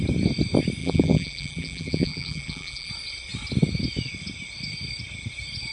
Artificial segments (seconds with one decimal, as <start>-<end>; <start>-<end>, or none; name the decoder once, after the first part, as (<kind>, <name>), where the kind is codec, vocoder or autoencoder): 0.8-2.9 (vocoder, BigVGAN v2)